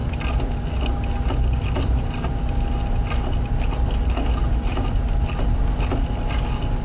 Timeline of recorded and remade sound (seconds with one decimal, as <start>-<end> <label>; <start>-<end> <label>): 0.0-6.8 recorded